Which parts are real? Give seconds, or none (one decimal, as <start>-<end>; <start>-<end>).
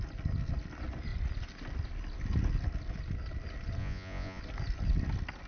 0.0-3.8; 4.4-5.5